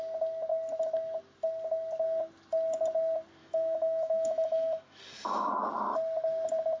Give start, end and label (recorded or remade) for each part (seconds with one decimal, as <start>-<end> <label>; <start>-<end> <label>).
0.0-3.4 recorded; 3.4-5.0 remade; 5.0-6.8 recorded